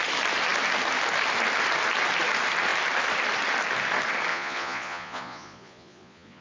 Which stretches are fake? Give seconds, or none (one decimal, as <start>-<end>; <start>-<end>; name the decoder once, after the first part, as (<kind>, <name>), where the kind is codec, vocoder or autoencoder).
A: 4.3-6.4 (vocoder, Vocos)